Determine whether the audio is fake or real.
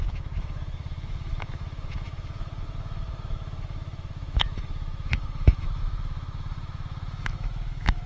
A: fake